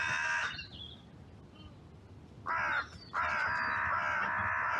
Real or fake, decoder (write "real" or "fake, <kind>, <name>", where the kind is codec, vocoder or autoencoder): real